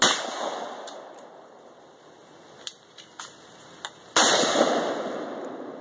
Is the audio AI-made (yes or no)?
no